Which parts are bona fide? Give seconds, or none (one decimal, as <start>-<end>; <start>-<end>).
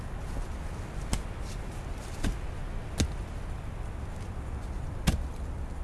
0.0-5.8